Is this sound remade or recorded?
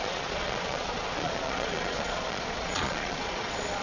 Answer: remade